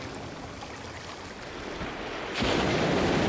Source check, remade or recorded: recorded